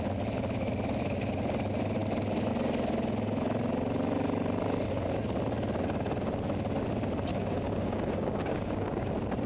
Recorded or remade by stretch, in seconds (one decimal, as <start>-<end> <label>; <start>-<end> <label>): 0.0-7.3 recorded; 7.3-9.1 remade; 9.1-9.5 recorded